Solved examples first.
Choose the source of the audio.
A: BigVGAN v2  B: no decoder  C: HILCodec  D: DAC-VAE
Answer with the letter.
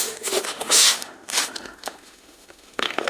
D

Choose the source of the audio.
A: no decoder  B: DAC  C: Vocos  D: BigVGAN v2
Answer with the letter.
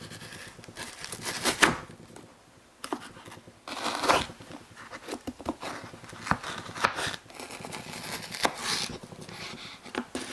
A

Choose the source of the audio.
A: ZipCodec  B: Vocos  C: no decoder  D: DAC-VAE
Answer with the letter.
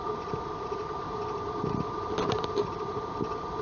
C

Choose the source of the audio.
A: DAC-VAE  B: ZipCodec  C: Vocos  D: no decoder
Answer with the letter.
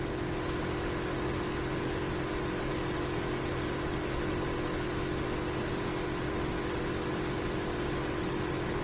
D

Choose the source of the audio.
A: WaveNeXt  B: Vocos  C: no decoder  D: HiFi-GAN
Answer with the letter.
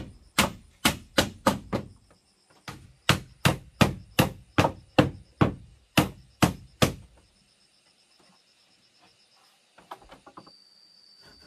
C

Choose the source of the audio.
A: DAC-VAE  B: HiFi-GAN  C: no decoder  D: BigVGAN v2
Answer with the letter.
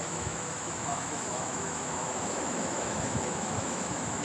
A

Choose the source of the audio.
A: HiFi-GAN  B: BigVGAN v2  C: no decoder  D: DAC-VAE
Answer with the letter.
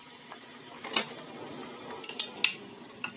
C